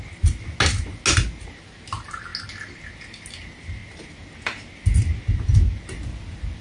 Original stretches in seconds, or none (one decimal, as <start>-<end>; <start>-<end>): 0.0-6.6